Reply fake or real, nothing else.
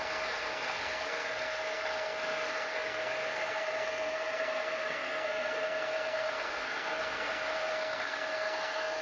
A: fake